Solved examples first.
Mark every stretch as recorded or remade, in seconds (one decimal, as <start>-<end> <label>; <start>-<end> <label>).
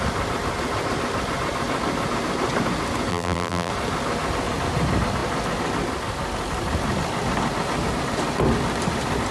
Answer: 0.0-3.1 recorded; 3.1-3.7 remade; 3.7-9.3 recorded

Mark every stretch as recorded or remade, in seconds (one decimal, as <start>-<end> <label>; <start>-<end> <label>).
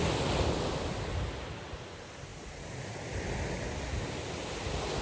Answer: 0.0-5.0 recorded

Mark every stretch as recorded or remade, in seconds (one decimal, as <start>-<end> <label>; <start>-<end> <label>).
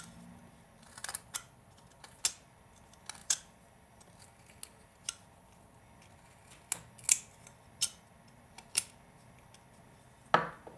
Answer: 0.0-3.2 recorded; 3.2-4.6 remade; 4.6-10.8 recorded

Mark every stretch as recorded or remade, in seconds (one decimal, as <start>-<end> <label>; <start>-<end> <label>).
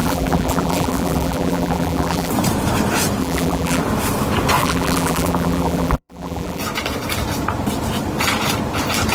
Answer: 0.0-2.3 remade; 2.3-3.2 recorded; 3.2-3.8 remade; 3.8-4.6 recorded; 4.6-6.6 remade; 6.6-9.1 recorded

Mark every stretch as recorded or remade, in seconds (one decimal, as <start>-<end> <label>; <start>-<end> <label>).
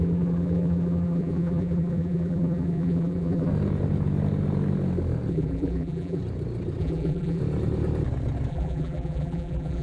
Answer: 0.0-3.5 remade; 3.5-5.3 recorded; 5.3-6.2 remade; 6.2-6.8 recorded; 6.8-7.4 remade; 7.4-8.5 recorded; 8.5-9.8 remade